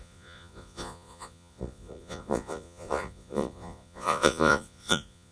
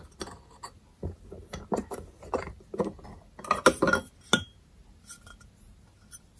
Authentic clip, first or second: second